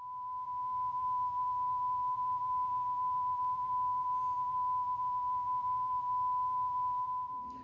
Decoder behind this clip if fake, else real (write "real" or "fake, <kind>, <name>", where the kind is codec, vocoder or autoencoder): fake, vocoder, BigVGAN v2